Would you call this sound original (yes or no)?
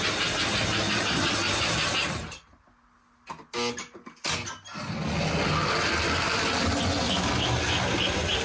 yes